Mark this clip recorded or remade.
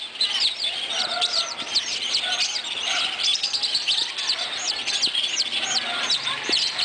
recorded